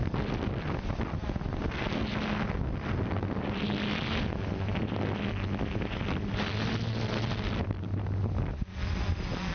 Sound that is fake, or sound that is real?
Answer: real